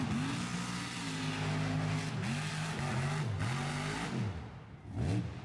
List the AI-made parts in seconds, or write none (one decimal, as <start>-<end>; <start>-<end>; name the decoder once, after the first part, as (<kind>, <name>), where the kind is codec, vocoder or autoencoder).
none